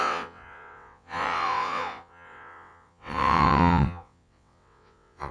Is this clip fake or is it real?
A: fake